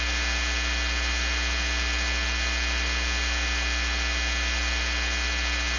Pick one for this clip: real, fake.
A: real